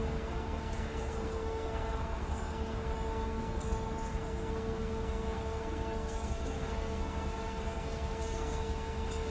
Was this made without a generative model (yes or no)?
no